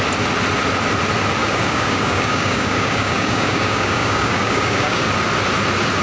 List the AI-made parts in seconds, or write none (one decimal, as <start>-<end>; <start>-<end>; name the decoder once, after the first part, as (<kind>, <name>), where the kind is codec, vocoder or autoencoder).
1.4-5.0 (codec, DAC)